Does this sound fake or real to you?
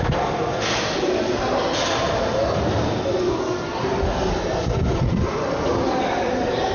real